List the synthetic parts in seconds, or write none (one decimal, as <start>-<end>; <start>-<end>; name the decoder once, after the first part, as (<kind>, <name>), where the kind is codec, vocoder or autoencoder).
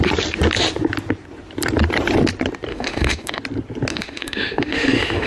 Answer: 2.7-3.4 (autoencoder, DAC-VAE); 3.9-5.3